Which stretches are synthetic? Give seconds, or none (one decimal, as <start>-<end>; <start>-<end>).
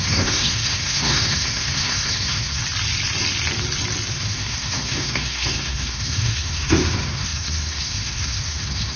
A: 0.0-2.6; 4.1-9.0